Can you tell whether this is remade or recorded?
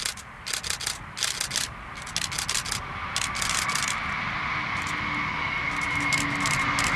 recorded